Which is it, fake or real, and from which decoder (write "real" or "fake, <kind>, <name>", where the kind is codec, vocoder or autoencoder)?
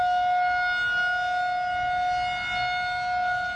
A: real